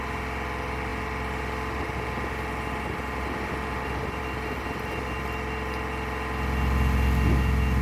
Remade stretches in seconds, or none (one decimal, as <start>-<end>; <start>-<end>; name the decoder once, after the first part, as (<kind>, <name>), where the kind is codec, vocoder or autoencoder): none